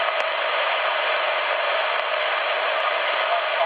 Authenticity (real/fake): real